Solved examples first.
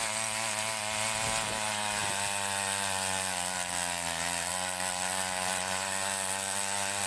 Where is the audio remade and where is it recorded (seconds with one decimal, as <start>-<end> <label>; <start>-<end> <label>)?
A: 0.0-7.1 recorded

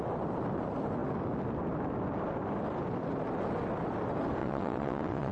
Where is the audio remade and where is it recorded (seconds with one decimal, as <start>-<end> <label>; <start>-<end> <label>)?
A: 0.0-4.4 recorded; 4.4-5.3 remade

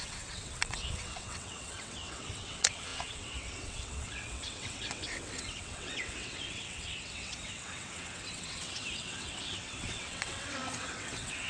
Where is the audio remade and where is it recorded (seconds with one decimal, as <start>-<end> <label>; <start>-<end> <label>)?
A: 0.0-11.5 remade

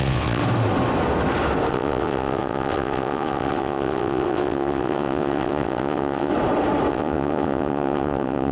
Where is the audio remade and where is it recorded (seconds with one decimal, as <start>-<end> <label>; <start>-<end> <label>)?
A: 0.0-0.4 remade; 0.4-1.7 recorded; 1.7-6.3 remade; 6.3-6.9 recorded; 6.9-8.5 remade

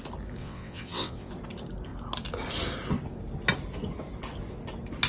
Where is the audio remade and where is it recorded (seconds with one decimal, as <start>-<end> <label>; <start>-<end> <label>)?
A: 0.0-0.4 recorded; 0.4-1.3 remade; 1.3-5.1 recorded

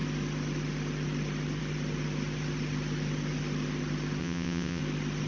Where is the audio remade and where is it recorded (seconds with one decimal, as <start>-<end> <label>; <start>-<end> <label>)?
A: 0.0-4.2 recorded; 4.2-4.8 remade; 4.8-5.3 recorded

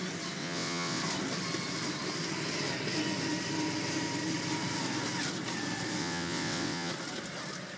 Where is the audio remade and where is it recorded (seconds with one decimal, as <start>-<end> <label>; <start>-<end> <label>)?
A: 0.0-0.4 recorded; 0.4-1.0 remade; 1.0-6.0 recorded; 6.0-6.9 remade; 6.9-7.8 recorded